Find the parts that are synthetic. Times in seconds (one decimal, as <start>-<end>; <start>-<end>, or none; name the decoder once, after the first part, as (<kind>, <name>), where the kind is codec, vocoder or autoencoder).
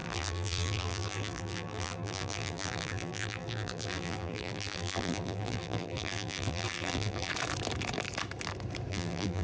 0.0-7.3 (vocoder, BigVGAN v2); 8.9-9.4